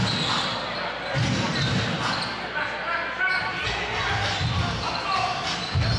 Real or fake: real